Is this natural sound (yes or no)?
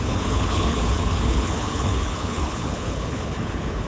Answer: no